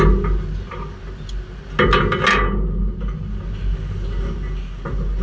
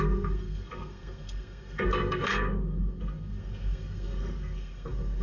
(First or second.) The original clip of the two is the first